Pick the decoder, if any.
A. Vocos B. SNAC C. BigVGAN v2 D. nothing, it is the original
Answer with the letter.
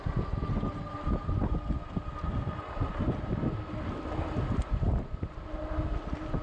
D